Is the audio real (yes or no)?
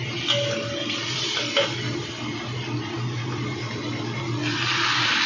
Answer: yes